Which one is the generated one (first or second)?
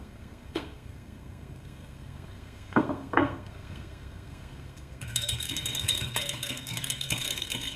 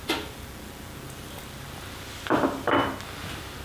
first